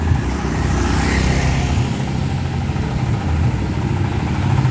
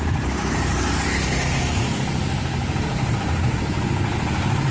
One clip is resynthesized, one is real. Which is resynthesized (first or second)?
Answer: second